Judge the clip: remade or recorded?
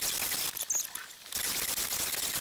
recorded